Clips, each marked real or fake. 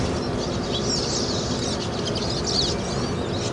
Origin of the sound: real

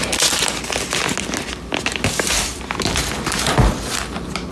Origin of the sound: real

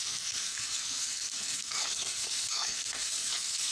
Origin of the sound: fake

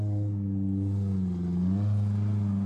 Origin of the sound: real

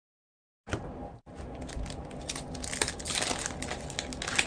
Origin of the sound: real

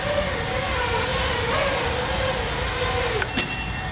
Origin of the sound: real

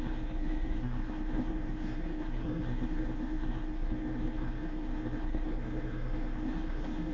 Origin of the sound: fake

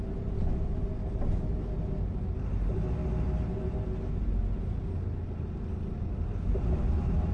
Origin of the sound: real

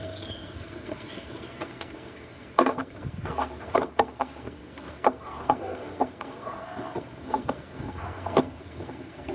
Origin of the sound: fake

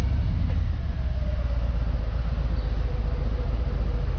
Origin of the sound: real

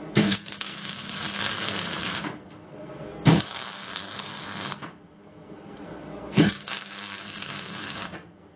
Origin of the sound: fake